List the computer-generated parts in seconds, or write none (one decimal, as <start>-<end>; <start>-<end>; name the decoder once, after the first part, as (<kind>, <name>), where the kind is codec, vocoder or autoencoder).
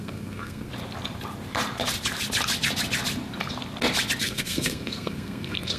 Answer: 0.0-0.7 (codec, SNAC); 4.2-5.8